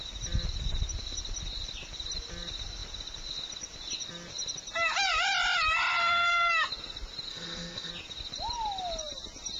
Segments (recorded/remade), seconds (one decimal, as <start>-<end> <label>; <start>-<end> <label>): 0.0-6.0 recorded; 6.0-6.5 remade; 6.5-7.3 recorded; 7.3-7.9 remade; 7.9-9.6 recorded